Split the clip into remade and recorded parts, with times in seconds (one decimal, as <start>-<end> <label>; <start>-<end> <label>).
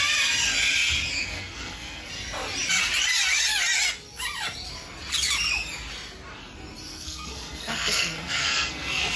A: 0.0-1.2 recorded; 1.2-2.1 remade; 2.1-6.9 recorded; 6.9-9.2 remade